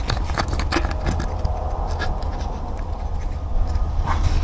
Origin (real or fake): real